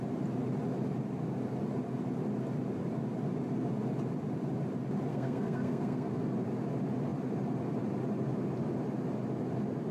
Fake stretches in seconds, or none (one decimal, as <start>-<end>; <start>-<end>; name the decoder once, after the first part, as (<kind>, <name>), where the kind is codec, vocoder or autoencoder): 5.1-6.2 (codec, SNAC)